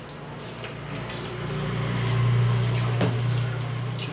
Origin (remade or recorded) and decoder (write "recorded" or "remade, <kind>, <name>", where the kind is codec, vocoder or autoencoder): recorded